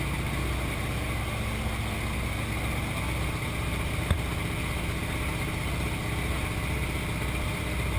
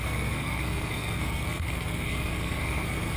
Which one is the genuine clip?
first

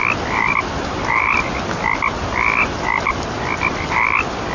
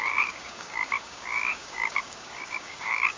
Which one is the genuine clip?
first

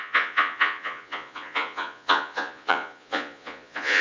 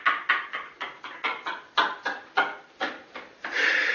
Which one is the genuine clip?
second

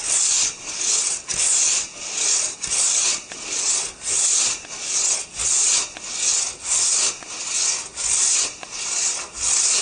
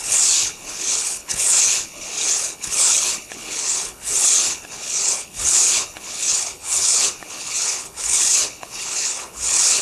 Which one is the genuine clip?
first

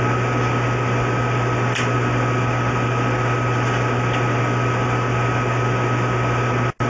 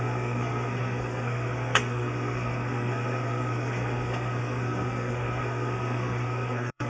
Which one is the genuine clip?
first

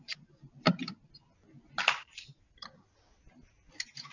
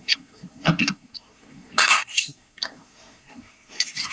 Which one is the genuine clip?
first